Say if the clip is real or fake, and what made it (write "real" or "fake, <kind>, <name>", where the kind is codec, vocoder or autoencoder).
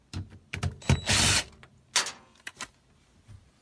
real